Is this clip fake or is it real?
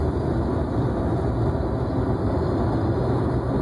real